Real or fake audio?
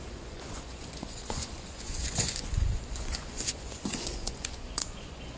fake